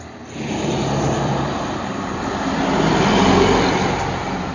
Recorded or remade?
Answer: remade